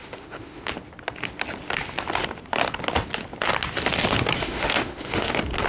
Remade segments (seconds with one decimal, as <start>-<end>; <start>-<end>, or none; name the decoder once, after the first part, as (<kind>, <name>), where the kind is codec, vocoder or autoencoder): 0.0-0.7 (autoencoder, DAC-VAE); 4.4-5.3